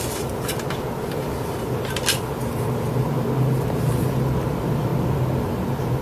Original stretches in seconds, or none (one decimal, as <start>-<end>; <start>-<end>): 0.0-6.0